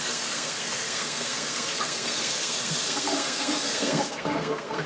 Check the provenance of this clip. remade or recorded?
remade